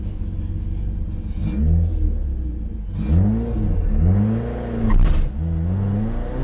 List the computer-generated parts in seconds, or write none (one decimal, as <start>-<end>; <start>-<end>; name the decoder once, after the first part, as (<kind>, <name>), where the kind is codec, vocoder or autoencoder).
0.0-0.9 (codec, DAC)